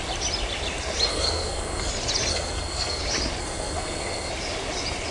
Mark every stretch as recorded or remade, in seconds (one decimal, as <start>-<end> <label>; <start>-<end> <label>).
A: 0.0-1.1 recorded; 1.1-1.9 remade; 1.9-2.3 recorded; 2.3-3.0 remade; 3.0-3.4 recorded; 3.4-4.3 remade; 4.3-5.1 recorded